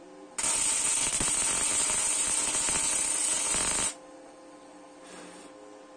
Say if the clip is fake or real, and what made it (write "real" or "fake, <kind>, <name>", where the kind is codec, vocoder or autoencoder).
real